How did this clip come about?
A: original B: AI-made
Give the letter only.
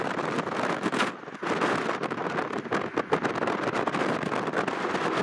A